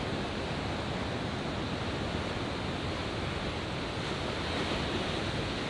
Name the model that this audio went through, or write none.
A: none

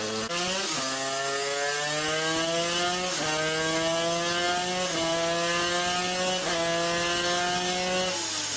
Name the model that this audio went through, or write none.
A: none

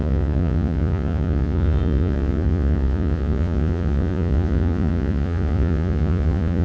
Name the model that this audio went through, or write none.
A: vocoder, Vocos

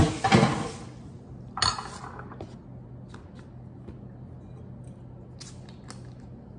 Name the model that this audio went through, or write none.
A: none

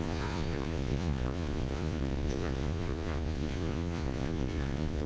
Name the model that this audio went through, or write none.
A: vocoder, Vocos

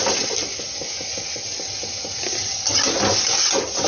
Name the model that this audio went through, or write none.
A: none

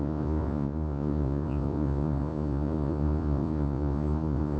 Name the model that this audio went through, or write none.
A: vocoder, Vocos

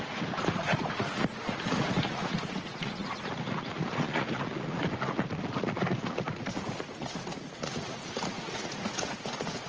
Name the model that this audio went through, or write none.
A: vocoder, Vocos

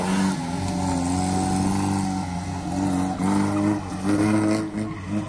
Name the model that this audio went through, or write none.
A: none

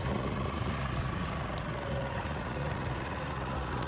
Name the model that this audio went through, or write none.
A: vocoder, Vocos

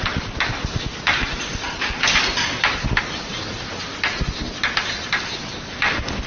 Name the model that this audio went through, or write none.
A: none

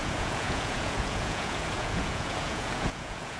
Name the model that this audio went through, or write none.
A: vocoder, Vocos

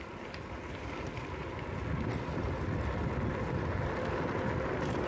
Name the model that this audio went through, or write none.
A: none